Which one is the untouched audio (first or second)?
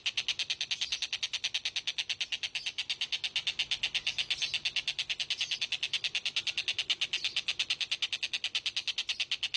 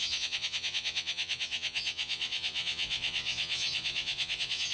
first